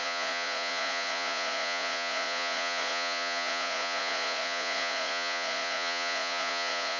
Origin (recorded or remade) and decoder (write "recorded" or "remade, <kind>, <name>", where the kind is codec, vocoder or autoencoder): remade, vocoder, Vocos